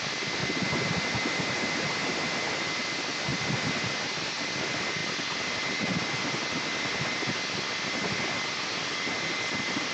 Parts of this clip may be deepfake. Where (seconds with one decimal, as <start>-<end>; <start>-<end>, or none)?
none